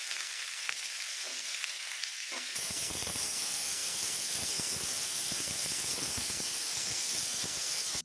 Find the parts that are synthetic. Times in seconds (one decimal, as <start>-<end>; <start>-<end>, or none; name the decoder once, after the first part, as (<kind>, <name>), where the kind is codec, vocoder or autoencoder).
0.0-8.0 (codec, SNAC)

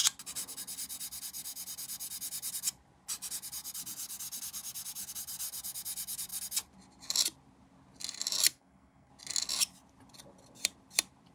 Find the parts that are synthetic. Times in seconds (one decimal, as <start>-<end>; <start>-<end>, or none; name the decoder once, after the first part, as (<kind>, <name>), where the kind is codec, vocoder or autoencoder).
8.5-9.1 (codec, SNAC)

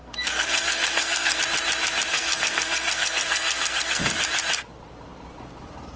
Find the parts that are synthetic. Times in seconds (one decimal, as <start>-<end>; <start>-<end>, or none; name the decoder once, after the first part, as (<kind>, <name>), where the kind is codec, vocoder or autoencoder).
0.0-1.4 (codec, SNAC); 2.1-4.2

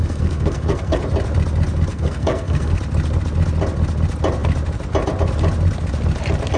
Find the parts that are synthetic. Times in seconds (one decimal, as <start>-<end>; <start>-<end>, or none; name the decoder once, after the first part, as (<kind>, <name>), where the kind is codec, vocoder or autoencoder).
0.0-1.0 (codec, SNAC); 1.9-2.8

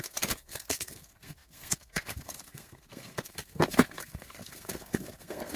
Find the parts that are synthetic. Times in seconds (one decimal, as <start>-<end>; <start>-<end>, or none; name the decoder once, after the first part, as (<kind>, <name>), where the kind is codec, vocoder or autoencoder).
0.0-5.6 (codec, SNAC)

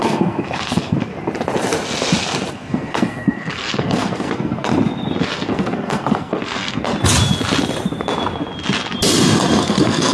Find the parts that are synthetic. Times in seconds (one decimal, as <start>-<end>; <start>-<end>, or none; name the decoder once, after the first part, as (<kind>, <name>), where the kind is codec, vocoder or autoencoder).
0.0-1.1 (codec, SNAC); 2.5-4.7; 5.2-6.9; 9.6-10.1